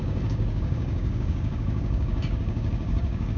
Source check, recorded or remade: remade